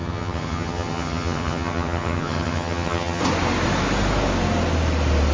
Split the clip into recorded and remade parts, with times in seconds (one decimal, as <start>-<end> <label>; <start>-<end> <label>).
0.0-3.2 remade; 3.2-5.3 recorded